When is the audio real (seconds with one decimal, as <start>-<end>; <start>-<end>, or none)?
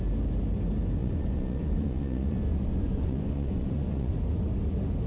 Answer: 0.0-1.0; 4.1-5.1